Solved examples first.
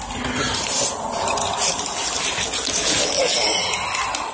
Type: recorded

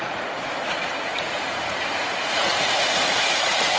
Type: remade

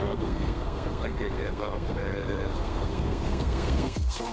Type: remade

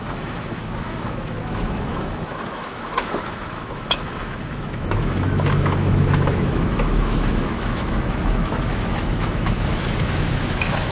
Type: remade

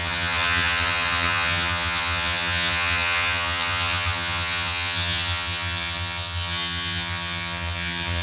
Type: remade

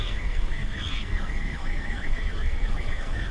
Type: remade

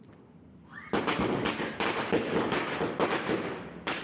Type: recorded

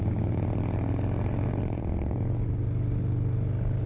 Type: recorded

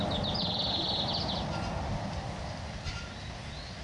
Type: recorded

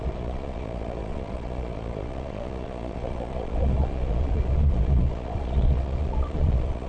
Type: remade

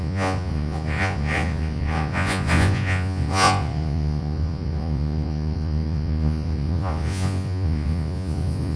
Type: remade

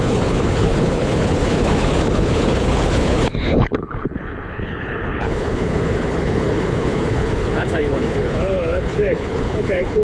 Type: remade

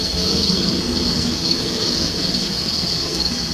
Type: remade